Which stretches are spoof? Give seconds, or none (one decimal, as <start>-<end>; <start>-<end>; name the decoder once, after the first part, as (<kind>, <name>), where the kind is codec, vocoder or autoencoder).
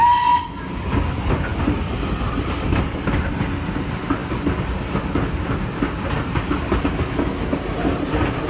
none